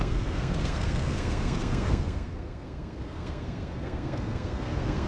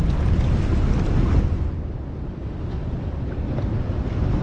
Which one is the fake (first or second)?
first